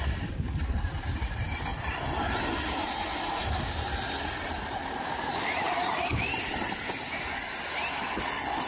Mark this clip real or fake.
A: real